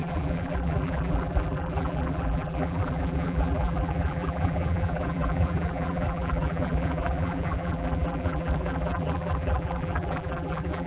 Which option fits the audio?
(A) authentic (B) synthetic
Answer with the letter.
B